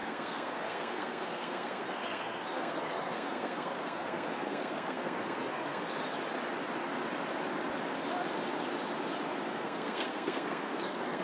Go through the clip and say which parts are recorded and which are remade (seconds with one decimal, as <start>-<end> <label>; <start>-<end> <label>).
0.0-5.8 remade; 5.8-9.5 recorded; 9.5-11.2 remade